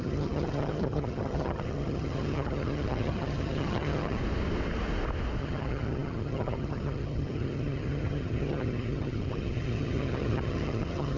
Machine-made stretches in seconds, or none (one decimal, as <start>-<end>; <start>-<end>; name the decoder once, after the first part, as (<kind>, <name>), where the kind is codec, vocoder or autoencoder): 0.0-4.2 (vocoder, HiFi-GAN); 5.4-11.2